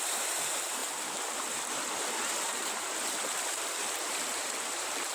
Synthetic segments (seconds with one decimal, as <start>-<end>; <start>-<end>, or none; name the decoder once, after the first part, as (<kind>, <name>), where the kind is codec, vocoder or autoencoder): 0.0-0.8 (vocoder, BigVGAN v2); 3.9-5.1